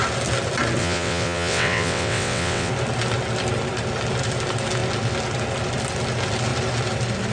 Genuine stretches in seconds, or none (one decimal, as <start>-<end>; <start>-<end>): 0.0-0.8; 2.7-7.3

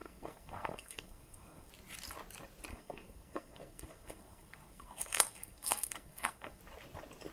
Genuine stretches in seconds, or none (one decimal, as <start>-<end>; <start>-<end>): 1.7-2.7; 6.6-7.3

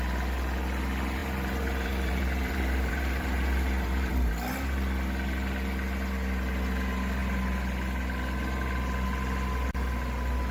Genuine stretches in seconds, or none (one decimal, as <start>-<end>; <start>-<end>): 0.0-1.2; 4.3-10.5

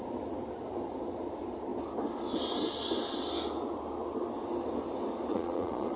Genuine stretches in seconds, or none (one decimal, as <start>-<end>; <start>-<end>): 0.0-5.3

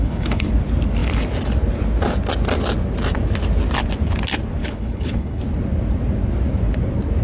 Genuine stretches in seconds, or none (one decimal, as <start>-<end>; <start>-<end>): 0.5-4.6; 5.4-7.2

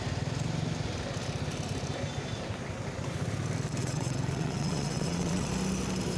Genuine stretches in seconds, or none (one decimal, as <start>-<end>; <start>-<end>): 0.0-3.8; 5.5-6.2

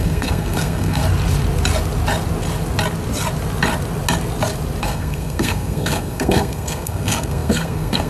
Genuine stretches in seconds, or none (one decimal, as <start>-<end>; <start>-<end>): 1.0-4.8

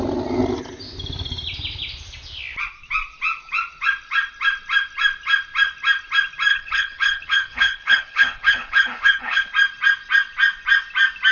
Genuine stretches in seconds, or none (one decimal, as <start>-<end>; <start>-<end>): 0.0-6.5; 9.5-11.3